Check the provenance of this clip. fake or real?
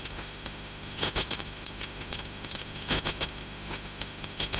fake